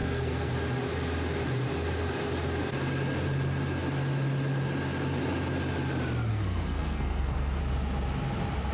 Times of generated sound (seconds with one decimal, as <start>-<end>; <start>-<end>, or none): 0.0-0.5; 6.3-7.6